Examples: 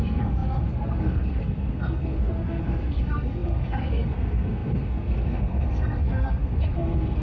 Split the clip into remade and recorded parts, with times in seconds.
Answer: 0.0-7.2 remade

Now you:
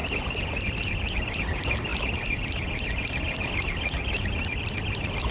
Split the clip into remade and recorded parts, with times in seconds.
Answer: 0.0-5.3 recorded

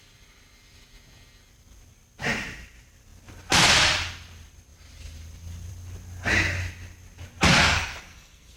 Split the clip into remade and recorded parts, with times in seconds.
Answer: 0.0-7.6 recorded; 7.6-8.6 remade